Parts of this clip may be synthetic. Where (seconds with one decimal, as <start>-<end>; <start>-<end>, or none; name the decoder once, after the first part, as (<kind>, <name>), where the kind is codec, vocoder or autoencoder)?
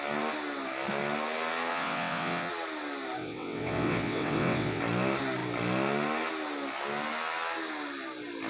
1.7-2.5 (vocoder, WaveNeXt); 3.2-4.8